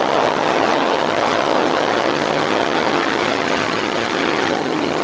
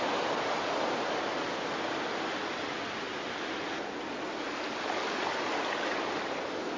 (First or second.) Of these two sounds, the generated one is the first